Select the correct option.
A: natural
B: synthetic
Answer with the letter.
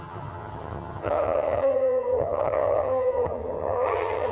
B